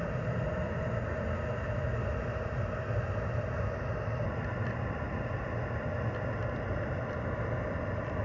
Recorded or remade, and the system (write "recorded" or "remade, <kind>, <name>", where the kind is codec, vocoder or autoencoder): recorded